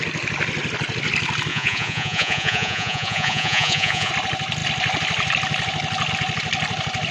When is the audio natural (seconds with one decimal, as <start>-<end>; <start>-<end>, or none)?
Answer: 0.0-1.5; 4.1-7.1